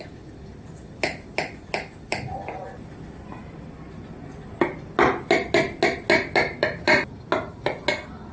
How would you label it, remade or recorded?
recorded